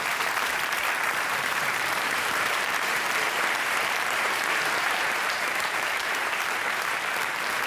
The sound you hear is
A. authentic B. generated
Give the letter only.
B